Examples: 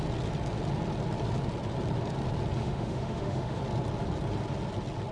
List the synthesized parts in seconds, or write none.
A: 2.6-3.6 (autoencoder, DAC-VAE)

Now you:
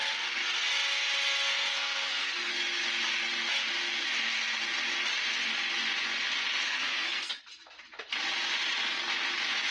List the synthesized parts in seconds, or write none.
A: 1.7-2.5 (codec, SNAC); 6.6-7.3

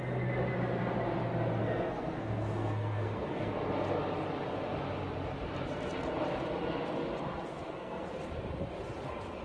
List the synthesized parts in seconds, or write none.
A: 1.6-3.5 (codec, SNAC); 7.5-8.1

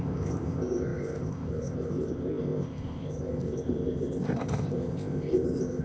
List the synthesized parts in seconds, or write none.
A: 0.0-5.8 (codec, ZipCodec)

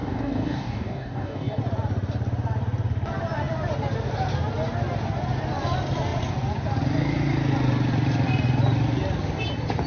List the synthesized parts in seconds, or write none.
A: 0.0-1.6 (codec, DAC)

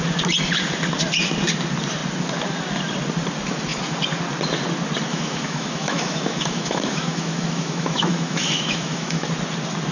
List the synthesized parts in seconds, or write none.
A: 5.1-9.3 (autoencoder, DAC-VAE)

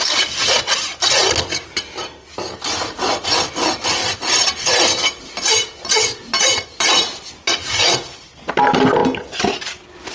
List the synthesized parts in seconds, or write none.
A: none